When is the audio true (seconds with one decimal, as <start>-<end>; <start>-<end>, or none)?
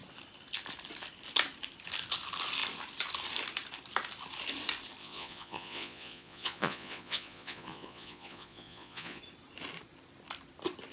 0.0-5.0; 9.2-10.9